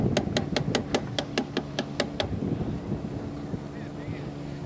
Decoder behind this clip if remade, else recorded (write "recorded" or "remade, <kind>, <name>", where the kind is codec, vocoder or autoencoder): recorded